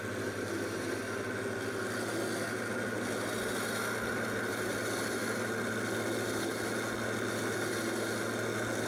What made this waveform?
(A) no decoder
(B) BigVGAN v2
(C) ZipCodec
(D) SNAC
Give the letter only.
A